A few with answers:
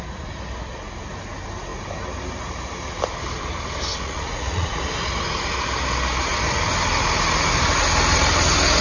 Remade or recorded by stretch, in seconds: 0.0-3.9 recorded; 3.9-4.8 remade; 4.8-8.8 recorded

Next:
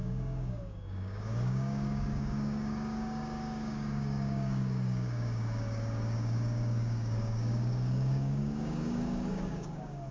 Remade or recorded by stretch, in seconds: 0.0-10.1 remade

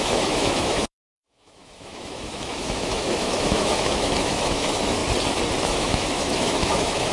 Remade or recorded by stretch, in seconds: 0.0-5.0 remade; 5.0-5.6 recorded; 5.6-7.1 remade

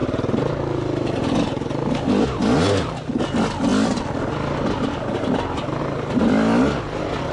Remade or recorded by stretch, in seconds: 0.0-7.3 recorded

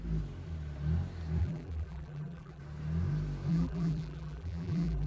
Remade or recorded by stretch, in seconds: 0.0-1.4 recorded; 1.4-2.6 remade; 2.6-3.5 recorded; 3.5-5.1 remade

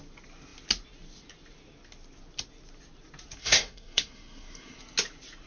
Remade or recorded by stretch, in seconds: 0.0-3.4 recorded; 3.4-4.8 remade; 4.8-5.5 recorded